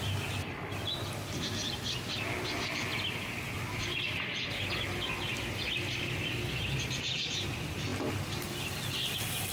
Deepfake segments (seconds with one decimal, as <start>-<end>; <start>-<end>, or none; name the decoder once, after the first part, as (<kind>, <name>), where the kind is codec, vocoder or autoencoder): none